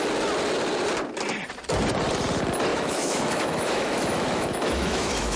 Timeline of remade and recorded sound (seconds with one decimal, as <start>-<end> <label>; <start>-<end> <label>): 0.0-2.7 recorded; 2.7-5.4 remade

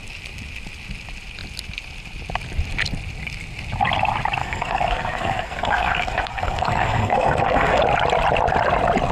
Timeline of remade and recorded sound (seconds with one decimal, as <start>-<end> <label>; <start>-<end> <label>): 0.0-4.4 recorded; 4.4-7.8 remade; 7.8-9.1 recorded